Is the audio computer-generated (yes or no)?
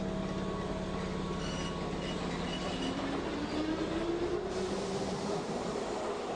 no